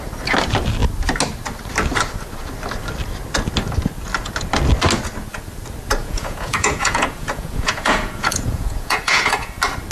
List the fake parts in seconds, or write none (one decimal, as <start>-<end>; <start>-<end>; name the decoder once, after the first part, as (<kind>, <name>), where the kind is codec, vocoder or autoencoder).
6.0-9.5 (vocoder, Vocos)